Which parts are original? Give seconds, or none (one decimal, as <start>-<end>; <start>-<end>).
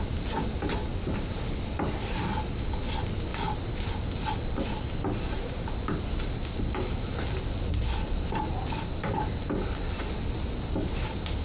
0.0-11.4